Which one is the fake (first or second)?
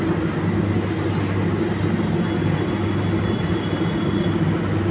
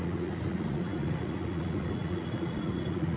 second